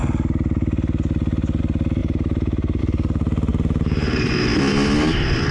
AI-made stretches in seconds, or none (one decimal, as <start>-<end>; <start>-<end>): 2.0-2.8; 3.5-5.5